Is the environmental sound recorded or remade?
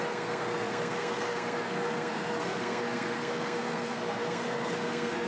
remade